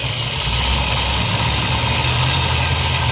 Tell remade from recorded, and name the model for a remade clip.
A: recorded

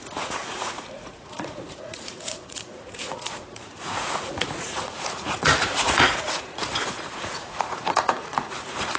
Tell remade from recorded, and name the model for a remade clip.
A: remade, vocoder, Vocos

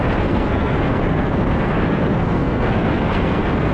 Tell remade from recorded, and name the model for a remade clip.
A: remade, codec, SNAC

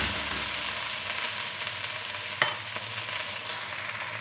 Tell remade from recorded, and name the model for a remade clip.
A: recorded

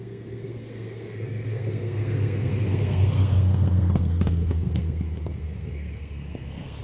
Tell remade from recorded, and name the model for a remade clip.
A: remade, codec, SNAC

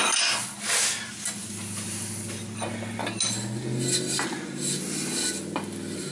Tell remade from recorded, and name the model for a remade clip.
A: recorded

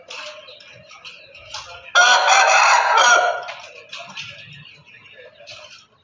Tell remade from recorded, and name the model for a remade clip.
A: recorded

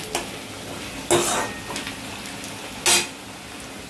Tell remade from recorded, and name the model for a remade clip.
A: recorded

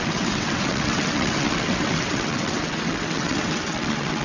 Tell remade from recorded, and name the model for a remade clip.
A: remade, vocoder, WaveNeXt